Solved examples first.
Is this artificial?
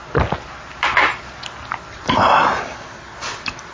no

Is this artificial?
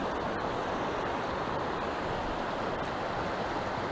no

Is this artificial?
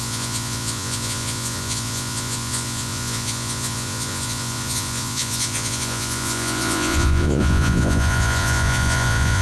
yes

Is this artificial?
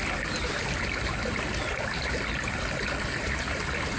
no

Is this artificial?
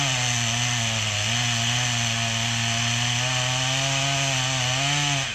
no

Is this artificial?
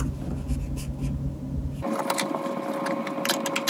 no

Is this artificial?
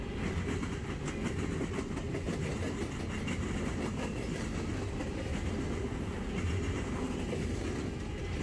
no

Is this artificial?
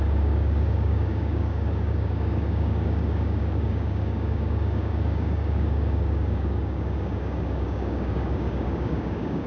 yes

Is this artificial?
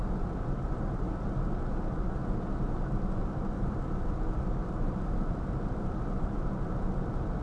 yes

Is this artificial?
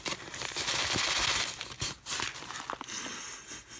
no